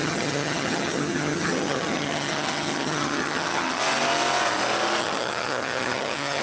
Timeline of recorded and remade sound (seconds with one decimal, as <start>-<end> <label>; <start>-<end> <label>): 0.0-3.8 remade; 3.8-5.0 recorded; 5.0-6.4 remade